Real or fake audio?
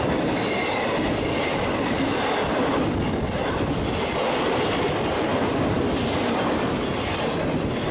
real